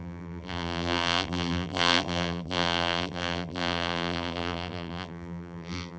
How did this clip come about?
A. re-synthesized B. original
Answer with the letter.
A